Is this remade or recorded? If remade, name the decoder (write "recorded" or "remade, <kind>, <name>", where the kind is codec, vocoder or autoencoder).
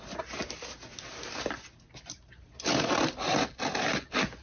recorded